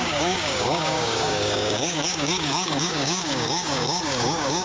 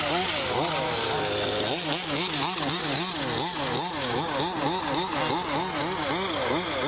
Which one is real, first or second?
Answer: second